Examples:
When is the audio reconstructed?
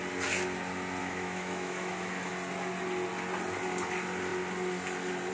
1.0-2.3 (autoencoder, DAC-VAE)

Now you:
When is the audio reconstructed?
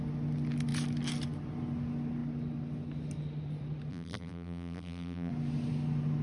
3.9-5.3 (vocoder, BigVGAN v2)